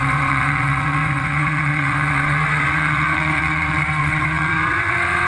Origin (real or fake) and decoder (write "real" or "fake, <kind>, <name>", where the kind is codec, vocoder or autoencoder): fake, vocoder, WaveNeXt